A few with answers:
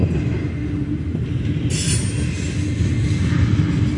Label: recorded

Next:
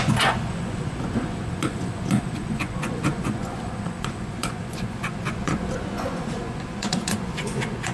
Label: remade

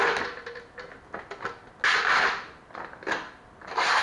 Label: recorded